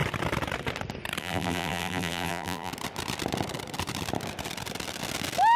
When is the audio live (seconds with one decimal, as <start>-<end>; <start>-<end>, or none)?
0.0-1.2; 2.7-5.6

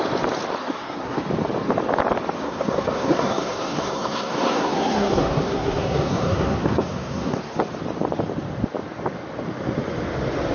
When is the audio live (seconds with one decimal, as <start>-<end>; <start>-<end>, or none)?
0.0-0.6; 1.2-2.4; 7.4-10.5

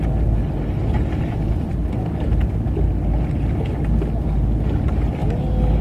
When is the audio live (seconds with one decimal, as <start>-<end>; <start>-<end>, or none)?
0.0-5.8

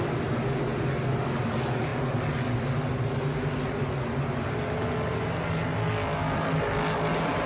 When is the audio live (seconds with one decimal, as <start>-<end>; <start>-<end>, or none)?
0.0-7.5

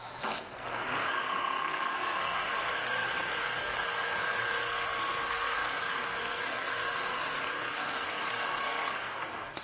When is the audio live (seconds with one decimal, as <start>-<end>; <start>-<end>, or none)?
none

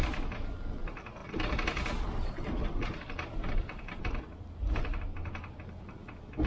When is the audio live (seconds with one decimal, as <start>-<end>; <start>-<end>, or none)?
0.0-1.2; 4.0-6.5

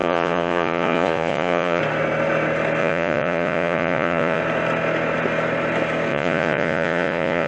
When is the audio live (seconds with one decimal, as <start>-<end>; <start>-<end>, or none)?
1.8-2.8; 4.4-6.1